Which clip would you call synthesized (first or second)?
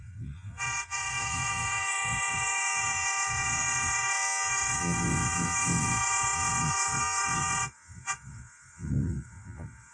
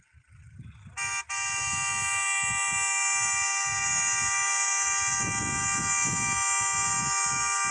first